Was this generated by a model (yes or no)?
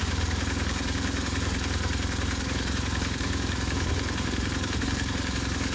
yes